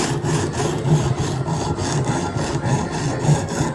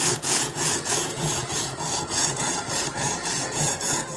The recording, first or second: first